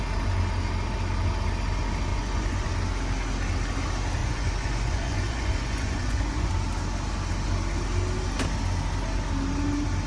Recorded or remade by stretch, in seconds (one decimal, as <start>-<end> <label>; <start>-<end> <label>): 0.0-2.1 recorded; 2.1-2.7 remade; 2.7-4.2 recorded; 4.2-6.5 remade; 6.5-10.1 recorded